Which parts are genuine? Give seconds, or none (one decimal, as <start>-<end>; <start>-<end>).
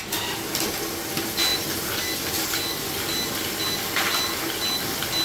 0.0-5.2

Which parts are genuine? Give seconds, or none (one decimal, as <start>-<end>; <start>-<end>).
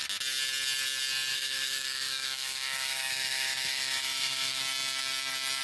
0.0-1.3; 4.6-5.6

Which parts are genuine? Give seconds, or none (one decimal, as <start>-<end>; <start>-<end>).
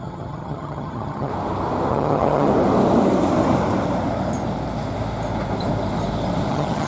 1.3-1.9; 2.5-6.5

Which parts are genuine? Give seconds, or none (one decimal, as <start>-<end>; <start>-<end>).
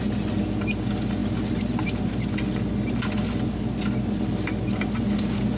0.0-5.6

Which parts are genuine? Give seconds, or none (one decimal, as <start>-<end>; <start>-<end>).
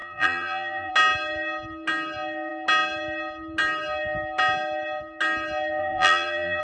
0.9-5.8